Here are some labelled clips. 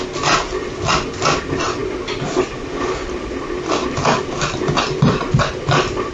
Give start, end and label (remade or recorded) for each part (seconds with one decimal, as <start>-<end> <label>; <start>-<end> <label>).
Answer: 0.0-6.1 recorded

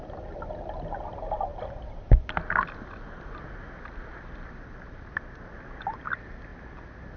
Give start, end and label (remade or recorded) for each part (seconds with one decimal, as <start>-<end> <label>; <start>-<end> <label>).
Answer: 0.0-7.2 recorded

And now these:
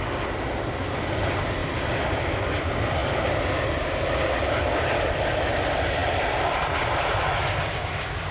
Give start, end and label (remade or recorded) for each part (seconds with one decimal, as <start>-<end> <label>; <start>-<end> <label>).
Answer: 0.0-8.3 recorded

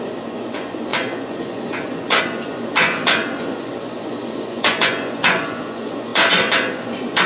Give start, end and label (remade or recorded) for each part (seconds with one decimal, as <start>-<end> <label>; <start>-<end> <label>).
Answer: 0.0-7.3 remade

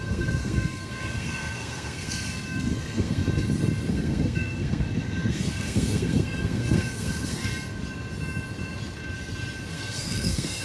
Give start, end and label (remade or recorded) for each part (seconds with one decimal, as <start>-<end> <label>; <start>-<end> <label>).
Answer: 0.0-3.2 remade; 3.2-3.9 recorded; 3.9-7.5 remade; 7.5-9.7 recorded; 9.7-10.6 remade